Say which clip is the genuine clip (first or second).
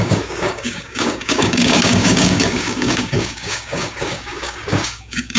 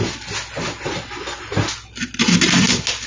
second